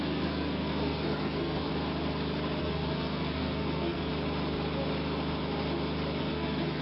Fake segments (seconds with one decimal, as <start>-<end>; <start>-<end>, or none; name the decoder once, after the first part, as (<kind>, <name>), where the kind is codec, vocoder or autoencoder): 0.0-1.7 (codec, SNAC); 2.6-4.1; 6.2-6.8